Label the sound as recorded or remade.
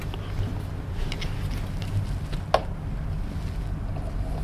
recorded